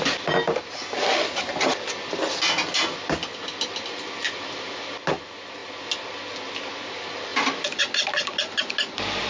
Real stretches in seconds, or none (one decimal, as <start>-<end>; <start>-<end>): 0.0-9.3

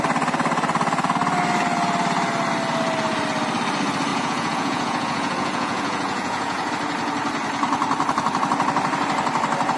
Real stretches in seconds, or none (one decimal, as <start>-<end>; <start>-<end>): 0.0-4.1; 6.7-9.8

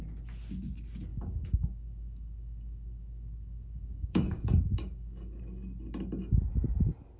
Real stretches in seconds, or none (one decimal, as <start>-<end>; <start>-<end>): 0.0-1.1; 5.4-7.2

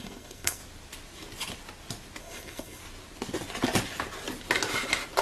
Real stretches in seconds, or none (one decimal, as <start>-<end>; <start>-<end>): 0.6-2.2; 2.8-5.2

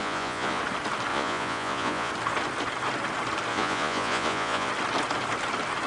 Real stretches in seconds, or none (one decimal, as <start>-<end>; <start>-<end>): 0.6-1.1; 2.1-3.5; 4.7-5.9

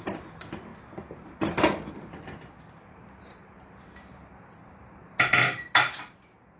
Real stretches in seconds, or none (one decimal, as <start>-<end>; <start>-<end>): 0.0-6.6

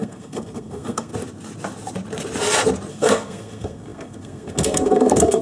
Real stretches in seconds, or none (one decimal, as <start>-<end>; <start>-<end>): 1.1-2.9

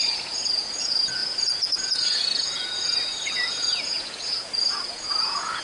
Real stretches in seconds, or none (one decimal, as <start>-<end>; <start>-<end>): none